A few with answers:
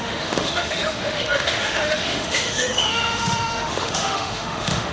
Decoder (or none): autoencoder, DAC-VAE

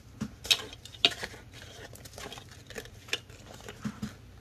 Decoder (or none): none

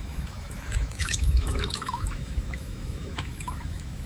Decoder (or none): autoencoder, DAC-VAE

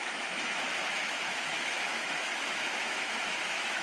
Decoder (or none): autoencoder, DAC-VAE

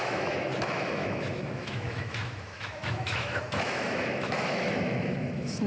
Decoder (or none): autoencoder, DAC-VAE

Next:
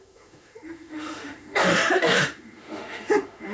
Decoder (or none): autoencoder, DAC-VAE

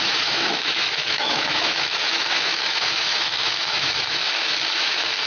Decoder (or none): autoencoder, DAC-VAE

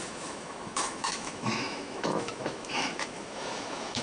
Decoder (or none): autoencoder, DAC-VAE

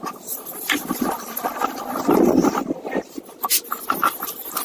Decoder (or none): none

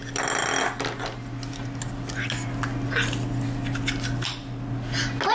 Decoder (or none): none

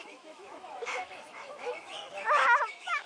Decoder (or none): autoencoder, DAC-VAE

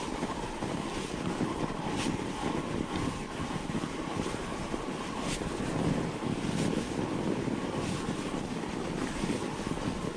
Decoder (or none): none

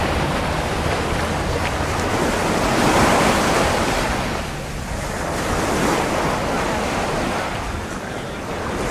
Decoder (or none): none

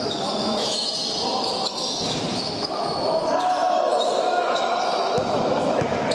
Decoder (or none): autoencoder, DAC-VAE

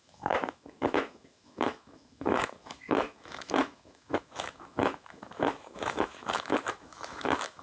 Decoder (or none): autoencoder, DAC-VAE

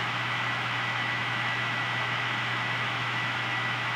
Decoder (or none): autoencoder, DAC-VAE